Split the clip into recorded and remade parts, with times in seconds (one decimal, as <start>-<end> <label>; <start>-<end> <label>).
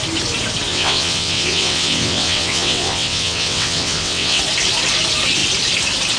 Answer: 0.0-0.7 recorded; 0.7-4.4 remade; 4.4-6.2 recorded